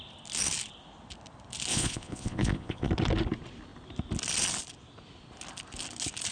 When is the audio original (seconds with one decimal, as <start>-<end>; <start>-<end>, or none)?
0.0-1.7; 2.9-6.3